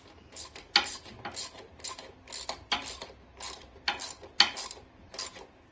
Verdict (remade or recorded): recorded